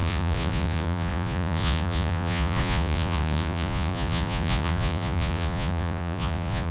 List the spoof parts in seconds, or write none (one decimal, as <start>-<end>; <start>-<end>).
0.0-6.7